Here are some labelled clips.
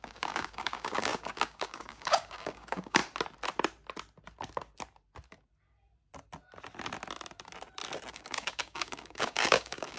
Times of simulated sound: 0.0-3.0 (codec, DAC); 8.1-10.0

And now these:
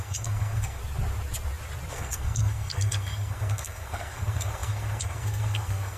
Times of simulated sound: 0.0-0.8 (codec, SNAC); 1.9-6.0

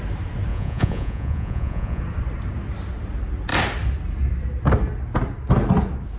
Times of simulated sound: 0.5-2.0 (vocoder, Vocos)

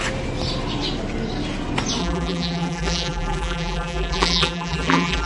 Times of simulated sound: 2.0-5.3 (vocoder, BigVGAN v2)

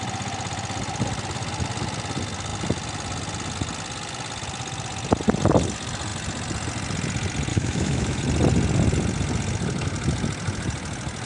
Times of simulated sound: 7.5-8.2 (autoencoder, DAC-VAE)

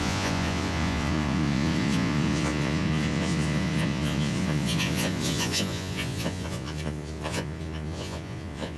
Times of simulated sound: 0.0-8.8 (vocoder, Vocos)

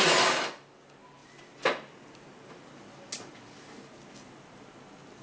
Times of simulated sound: none

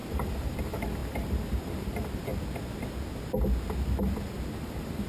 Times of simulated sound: 0.0-2.3 (vocoder, BigVGAN v2); 4.6-5.1